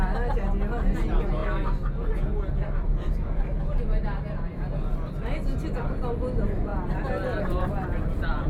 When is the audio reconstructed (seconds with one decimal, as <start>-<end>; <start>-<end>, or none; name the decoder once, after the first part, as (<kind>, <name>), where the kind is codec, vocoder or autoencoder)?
none

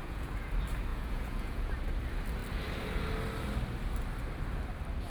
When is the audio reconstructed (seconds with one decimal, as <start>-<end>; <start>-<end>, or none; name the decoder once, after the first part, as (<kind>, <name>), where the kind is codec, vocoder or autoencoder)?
0.0-0.5 (vocoder, Vocos); 0.9-1.7